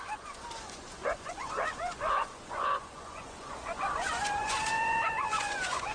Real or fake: fake